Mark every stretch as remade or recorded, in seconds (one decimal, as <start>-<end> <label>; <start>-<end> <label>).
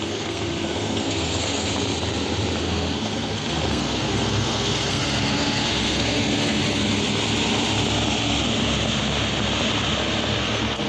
0.0-1.7 remade; 1.7-2.6 recorded; 2.6-6.6 remade; 6.6-10.4 recorded; 10.4-10.9 remade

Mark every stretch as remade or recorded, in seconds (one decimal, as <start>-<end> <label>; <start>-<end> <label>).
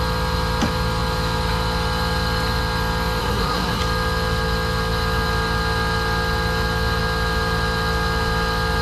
0.0-3.2 recorded; 3.2-3.8 remade; 3.8-8.8 recorded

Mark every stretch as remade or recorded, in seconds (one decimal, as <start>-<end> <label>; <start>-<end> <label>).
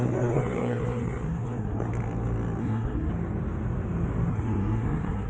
0.0-1.9 remade; 1.9-2.6 recorded; 2.6-3.1 remade; 3.1-4.3 recorded; 4.3-5.3 remade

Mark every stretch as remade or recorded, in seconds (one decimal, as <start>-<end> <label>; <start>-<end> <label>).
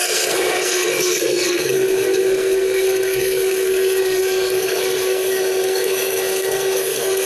0.0-7.3 remade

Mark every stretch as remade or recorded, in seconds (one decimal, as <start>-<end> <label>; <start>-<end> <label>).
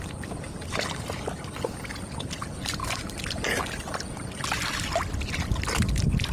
0.0-6.3 recorded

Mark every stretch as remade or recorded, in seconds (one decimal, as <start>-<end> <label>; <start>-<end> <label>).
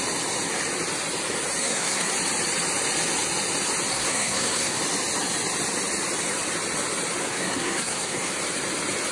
0.0-1.6 recorded; 1.6-2.1 remade; 2.1-3.9 recorded; 3.9-4.8 remade; 4.8-7.2 recorded; 7.2-8.3 remade; 8.3-9.1 recorded